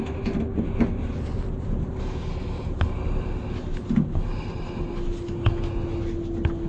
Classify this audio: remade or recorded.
recorded